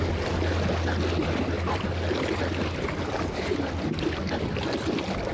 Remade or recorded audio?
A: recorded